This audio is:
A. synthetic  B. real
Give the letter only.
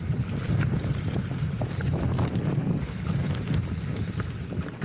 A